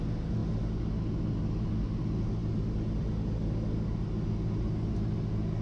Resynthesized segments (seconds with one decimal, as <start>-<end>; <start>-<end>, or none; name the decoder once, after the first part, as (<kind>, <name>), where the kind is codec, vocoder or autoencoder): none